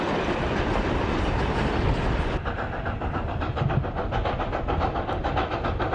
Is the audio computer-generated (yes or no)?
no